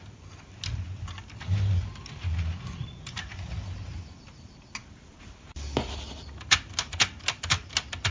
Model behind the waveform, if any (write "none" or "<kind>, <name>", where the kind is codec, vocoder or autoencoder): none